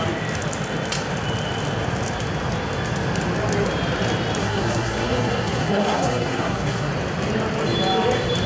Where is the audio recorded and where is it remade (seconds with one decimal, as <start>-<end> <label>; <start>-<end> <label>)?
0.0-4.4 recorded; 4.4-6.9 remade; 6.9-8.5 recorded